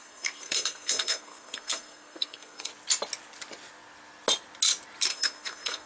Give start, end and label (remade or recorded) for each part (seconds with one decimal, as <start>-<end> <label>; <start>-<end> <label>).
0.0-2.7 remade; 2.7-5.1 recorded; 5.1-5.9 remade